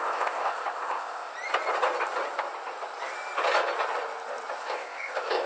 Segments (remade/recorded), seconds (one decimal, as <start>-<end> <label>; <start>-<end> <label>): 0.0-1.3 remade; 1.3-4.6 recorded; 4.6-5.5 remade

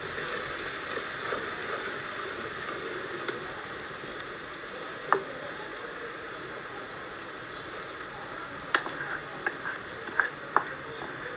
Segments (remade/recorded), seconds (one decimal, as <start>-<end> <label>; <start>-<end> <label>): 0.0-4.1 recorded; 4.1-4.7 remade; 4.7-5.7 recorded; 5.7-7.1 remade; 7.1-7.9 recorded; 7.9-8.5 remade; 8.5-11.4 recorded

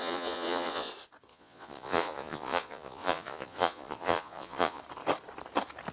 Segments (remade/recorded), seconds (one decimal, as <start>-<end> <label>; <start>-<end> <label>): 0.0-0.9 remade; 0.9-1.3 recorded; 1.3-4.8 remade; 4.8-5.9 recorded

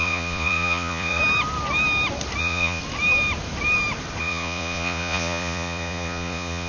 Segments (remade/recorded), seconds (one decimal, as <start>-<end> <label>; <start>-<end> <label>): 0.0-1.2 remade; 1.2-2.4 recorded; 2.4-2.8 remade; 2.8-4.2 recorded; 4.2-6.7 remade

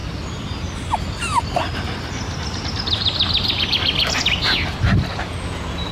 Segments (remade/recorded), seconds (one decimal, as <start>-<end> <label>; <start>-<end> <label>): 0.0-5.1 recorded; 5.1-5.9 remade

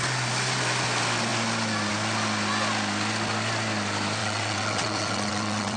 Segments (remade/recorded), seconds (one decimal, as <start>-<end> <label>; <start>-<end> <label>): 0.0-4.2 recorded; 4.2-5.8 remade